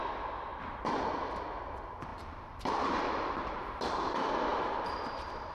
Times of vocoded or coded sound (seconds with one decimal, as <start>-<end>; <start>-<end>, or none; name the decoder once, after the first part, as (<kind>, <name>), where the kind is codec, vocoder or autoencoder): 0.5-1.0 (vocoder, BigVGAN v2); 2.1-3.4; 4.5-5.5